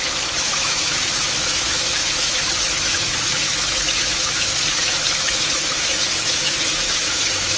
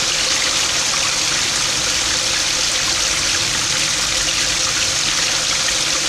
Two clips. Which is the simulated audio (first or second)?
first